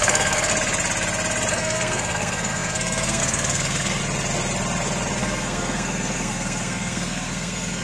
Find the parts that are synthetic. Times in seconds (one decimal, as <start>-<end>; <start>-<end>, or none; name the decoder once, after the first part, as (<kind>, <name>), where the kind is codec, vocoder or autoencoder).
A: 0.0-0.5 (codec, SNAC); 1.5-4.0; 5.2-7.8